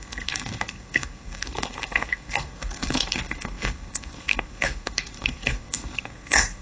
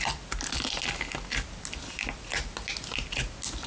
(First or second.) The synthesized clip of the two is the first